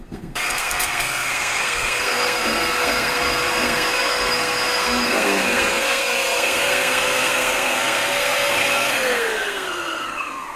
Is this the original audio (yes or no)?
no